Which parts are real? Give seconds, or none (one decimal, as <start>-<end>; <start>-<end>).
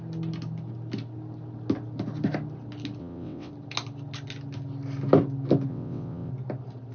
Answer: 0.0-3.0; 3.5-5.7; 6.3-6.9